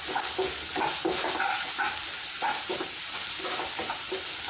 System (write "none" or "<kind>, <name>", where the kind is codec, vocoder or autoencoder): none